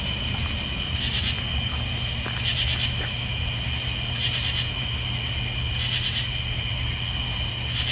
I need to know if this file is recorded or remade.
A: recorded